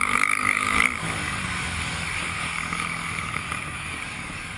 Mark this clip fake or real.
fake